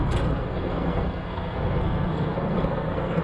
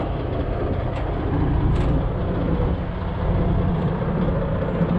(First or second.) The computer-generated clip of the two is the first